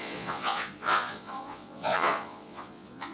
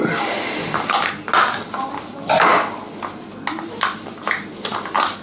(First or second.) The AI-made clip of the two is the first